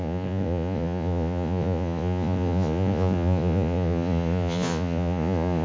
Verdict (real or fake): fake